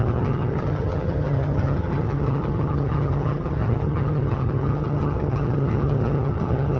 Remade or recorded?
remade